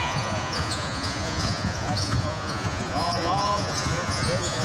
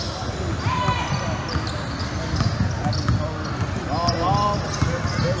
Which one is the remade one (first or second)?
first